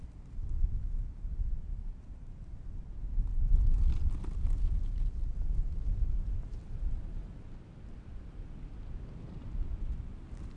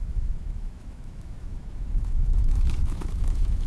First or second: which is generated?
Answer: second